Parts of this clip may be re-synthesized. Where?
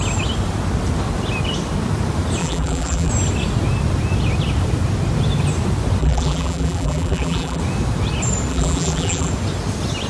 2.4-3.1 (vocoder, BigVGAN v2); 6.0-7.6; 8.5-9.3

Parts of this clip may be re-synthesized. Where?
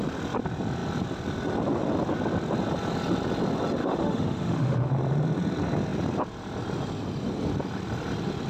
3.8-4.9 (autoencoder, DAC-VAE)